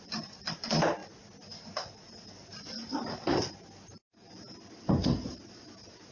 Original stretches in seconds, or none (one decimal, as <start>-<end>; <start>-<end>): 0.0-6.1